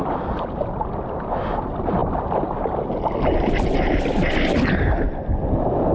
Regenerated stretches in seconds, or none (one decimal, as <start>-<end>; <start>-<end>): none